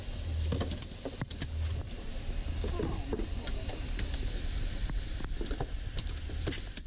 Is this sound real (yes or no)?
yes